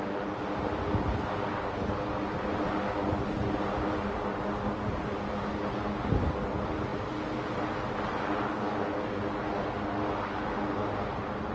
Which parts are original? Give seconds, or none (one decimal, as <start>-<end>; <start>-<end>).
0.0-11.5